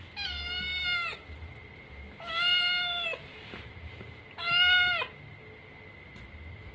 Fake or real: real